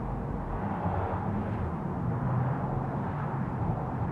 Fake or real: real